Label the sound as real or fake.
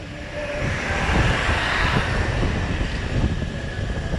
real